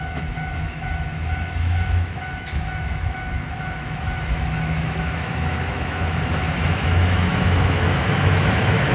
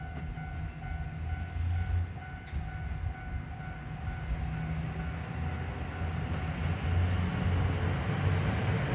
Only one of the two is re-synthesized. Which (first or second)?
first